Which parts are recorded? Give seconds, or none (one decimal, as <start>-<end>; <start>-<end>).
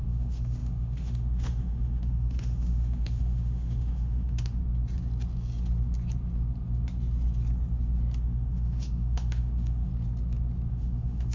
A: 4.6-8.2; 9.9-10.7